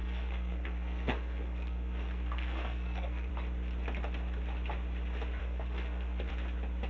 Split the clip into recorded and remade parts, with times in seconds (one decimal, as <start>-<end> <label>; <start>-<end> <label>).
0.0-3.3 remade; 3.3-5.4 recorded; 5.4-6.3 remade; 6.3-6.9 recorded